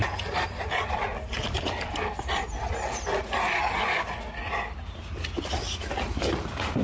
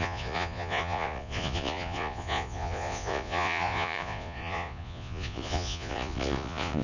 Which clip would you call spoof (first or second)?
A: second